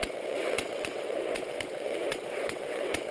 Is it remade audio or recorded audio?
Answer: remade